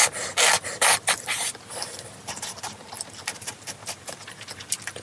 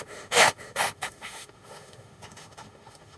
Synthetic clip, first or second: second